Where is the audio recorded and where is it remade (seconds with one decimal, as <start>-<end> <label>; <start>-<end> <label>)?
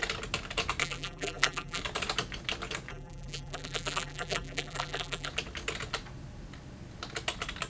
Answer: 0.0-0.8 recorded; 0.8-1.8 remade; 1.8-2.9 recorded; 2.9-5.3 remade; 5.3-7.7 recorded